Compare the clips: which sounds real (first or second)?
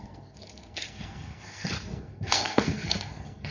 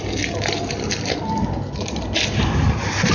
second